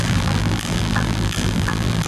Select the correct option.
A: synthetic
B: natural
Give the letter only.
A